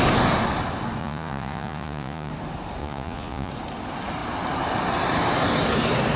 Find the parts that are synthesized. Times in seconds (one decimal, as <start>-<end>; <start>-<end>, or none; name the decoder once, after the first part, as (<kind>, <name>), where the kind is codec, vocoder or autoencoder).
1.0-2.3 (vocoder, Vocos); 2.8-3.5